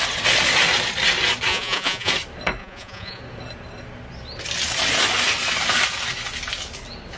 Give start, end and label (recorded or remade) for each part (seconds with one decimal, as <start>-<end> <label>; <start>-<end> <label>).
0.0-1.5 recorded; 1.5-2.1 remade; 2.1-2.6 recorded; 2.6-3.2 remade; 3.2-7.2 recorded